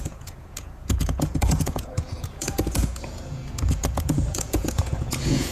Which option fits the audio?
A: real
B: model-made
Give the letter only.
B